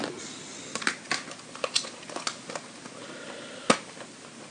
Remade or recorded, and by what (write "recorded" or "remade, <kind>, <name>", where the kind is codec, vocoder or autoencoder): recorded